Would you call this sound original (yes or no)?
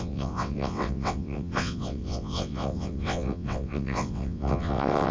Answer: no